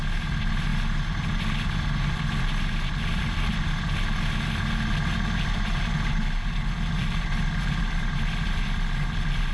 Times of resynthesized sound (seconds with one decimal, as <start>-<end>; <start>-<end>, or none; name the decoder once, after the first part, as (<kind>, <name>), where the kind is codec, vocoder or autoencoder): none

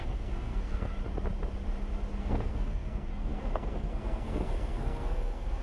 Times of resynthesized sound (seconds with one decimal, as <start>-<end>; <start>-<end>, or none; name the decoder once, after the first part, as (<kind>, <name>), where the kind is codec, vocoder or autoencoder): 0.0-0.9 (codec, SNAC); 2.2-5.6

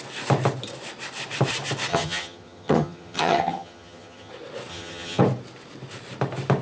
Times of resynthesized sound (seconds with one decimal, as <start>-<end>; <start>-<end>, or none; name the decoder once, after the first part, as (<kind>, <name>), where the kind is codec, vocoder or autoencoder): 1.9-4.3 (vocoder, HiFi-GAN); 4.7-5.2

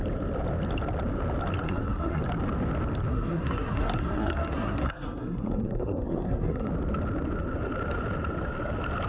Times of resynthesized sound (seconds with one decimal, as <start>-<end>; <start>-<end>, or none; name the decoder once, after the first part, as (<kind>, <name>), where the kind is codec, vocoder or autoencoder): 1.6-2.2 (codec, SNAC); 3.1-6.7

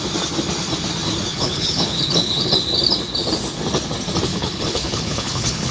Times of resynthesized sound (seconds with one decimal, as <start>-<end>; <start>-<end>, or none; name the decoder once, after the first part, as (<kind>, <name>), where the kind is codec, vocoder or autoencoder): 1.3-2.5 (codec, HILCodec); 4.3-5.7

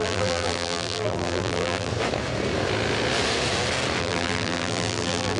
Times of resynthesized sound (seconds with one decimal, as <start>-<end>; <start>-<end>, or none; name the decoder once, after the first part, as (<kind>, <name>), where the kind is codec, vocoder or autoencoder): 0.0-1.9 (vocoder, BigVGAN v2); 4.0-5.4

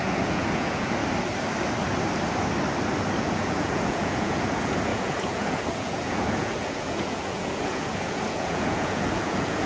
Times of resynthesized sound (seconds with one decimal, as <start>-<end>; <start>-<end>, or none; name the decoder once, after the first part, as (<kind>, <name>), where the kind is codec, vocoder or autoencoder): 0.0-1.0 (vocoder, Vocos); 3.2-9.7

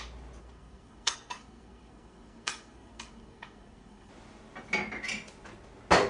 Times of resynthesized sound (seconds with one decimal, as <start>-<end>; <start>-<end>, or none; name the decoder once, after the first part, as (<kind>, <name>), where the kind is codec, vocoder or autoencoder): 0.4-4.1 (codec, SNAC)